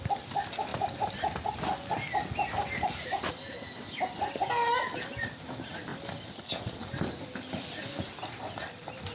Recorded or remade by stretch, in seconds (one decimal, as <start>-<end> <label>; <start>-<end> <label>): 0.0-9.1 recorded